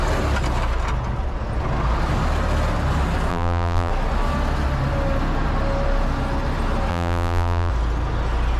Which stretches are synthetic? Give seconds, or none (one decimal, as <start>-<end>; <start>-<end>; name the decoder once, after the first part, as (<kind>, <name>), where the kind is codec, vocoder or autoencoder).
3.3-3.9 (vocoder, BigVGAN v2); 6.9-7.7